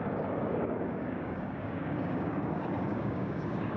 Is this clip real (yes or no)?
no